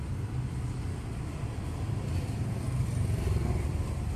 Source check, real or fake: real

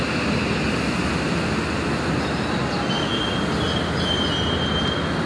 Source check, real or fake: real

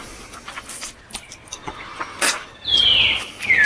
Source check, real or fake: real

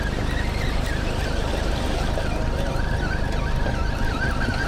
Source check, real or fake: real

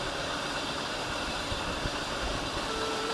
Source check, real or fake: fake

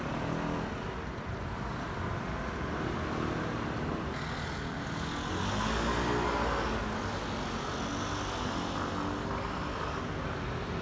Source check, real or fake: real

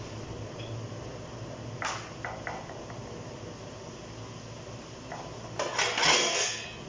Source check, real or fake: real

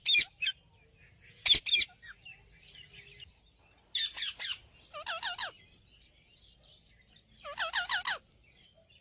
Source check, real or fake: real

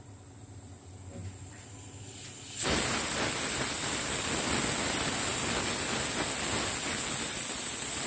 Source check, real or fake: real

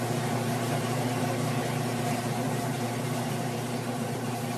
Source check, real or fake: fake